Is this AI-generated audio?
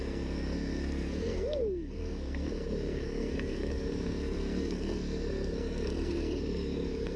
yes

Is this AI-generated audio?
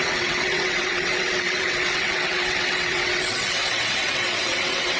yes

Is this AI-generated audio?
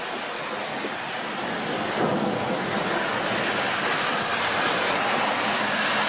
no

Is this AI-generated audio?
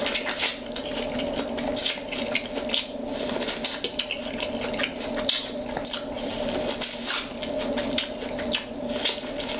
no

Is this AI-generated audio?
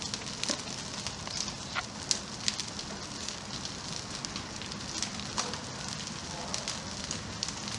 no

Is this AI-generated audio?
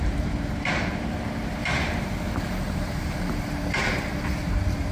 yes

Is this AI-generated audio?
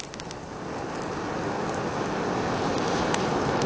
no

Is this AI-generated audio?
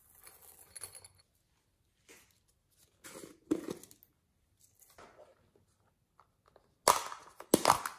no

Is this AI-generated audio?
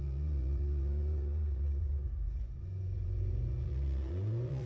yes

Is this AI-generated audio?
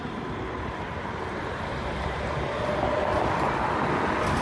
yes